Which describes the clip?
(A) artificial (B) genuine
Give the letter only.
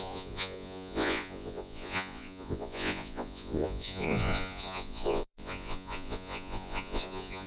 A